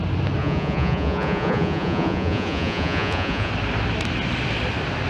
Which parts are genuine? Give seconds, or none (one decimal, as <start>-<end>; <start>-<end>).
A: 0.0-0.4; 3.5-5.1